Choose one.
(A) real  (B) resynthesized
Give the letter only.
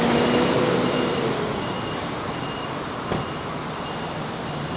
A